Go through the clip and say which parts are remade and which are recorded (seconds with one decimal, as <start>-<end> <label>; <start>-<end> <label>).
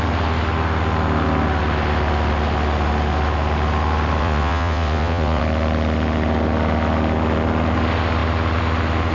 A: 0.0-4.2 recorded; 4.2-5.4 remade; 5.4-9.1 recorded